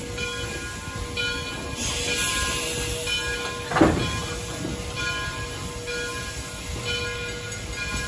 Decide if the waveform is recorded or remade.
recorded